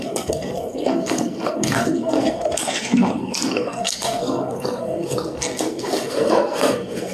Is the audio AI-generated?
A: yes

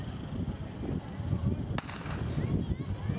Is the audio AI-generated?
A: no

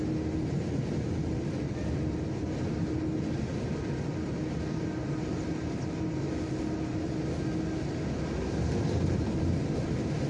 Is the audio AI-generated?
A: no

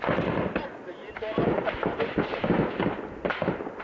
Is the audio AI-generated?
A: no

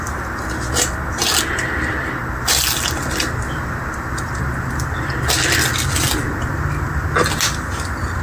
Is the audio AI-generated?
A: no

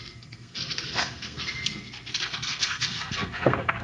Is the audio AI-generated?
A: yes